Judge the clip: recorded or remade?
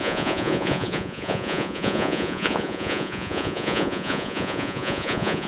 remade